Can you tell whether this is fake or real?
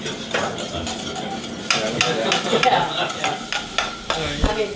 real